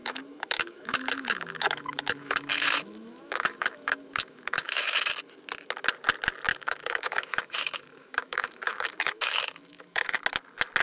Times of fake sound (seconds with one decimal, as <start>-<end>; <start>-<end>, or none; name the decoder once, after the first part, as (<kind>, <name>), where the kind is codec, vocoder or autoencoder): 0.0-5.1 (autoencoder, DAC-VAE); 6.5-10.2